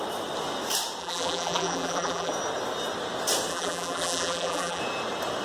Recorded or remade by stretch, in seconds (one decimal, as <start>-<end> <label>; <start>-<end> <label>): 0.0-1.0 recorded; 1.0-2.3 remade; 2.3-3.5 recorded; 3.5-4.8 remade; 4.8-5.4 recorded